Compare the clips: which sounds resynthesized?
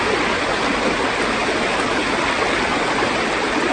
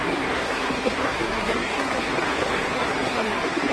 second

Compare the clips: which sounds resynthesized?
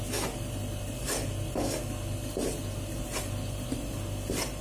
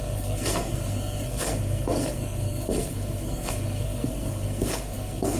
second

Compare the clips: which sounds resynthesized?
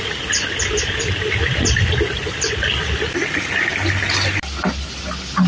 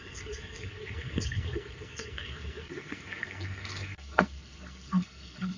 second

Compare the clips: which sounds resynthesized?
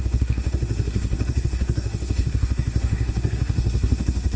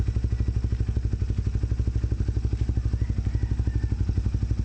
first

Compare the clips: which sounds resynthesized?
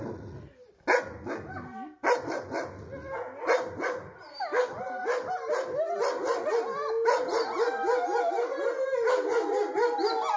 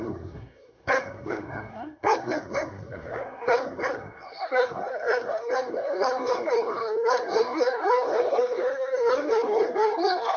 second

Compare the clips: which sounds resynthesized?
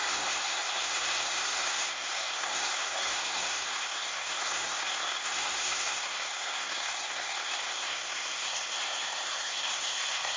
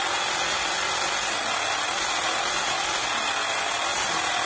first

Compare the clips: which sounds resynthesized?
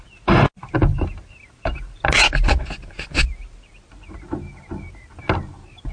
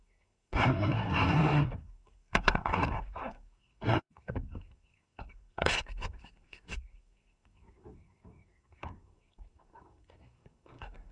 second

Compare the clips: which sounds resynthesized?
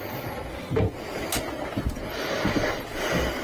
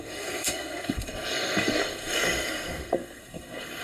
second